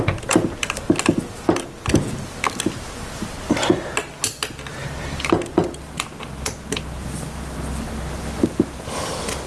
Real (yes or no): yes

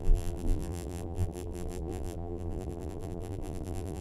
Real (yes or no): no